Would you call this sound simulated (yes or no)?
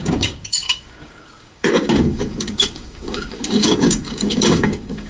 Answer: yes